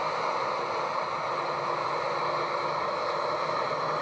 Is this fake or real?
real